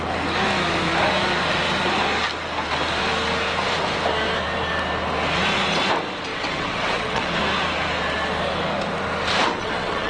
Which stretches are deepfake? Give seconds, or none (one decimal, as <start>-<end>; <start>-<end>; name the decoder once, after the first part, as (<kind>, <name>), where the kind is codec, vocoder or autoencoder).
6.3-7.4 (vocoder, WaveNeXt); 9.4-10.1